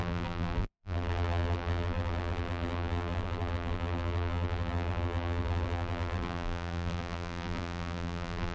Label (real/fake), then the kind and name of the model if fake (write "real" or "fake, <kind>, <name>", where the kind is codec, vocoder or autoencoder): fake, vocoder, BigVGAN v2